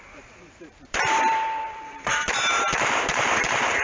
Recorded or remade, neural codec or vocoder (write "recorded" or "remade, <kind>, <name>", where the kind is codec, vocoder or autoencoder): remade, vocoder, BigVGAN v2